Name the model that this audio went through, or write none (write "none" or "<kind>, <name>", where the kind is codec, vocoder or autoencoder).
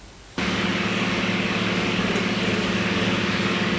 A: codec, DAC